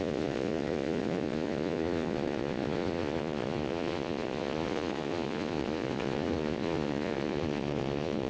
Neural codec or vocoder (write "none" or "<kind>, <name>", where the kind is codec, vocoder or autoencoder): vocoder, Vocos